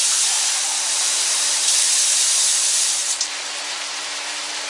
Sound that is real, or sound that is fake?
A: fake